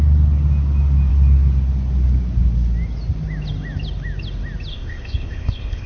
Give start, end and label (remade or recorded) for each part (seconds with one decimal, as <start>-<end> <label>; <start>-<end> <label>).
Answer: 0.0-4.7 recorded; 4.7-5.9 remade